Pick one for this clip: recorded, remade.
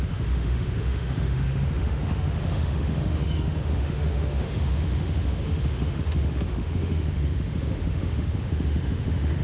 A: remade